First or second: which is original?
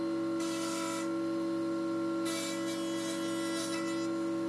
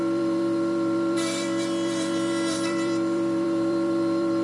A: first